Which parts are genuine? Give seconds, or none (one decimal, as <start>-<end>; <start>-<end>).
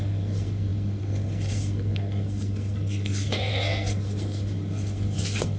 none